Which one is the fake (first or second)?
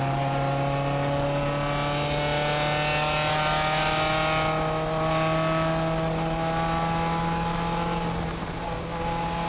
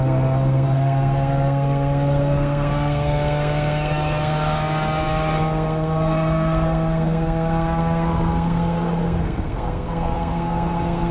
second